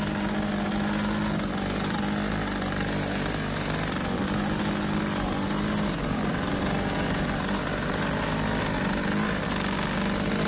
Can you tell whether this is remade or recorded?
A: recorded